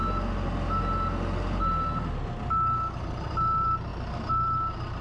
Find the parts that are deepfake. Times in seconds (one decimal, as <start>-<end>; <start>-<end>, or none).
3.0-5.0